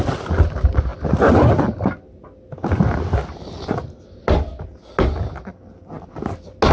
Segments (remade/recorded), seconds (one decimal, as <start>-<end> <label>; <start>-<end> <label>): 0.0-6.7 recorded